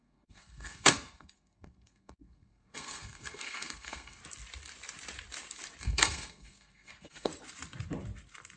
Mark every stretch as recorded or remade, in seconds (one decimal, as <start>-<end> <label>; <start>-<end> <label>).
0.0-4.2 remade; 4.2-5.8 recorded; 5.8-7.3 remade; 7.3-8.6 recorded